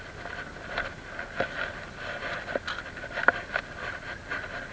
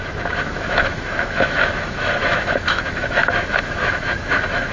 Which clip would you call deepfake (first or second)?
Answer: second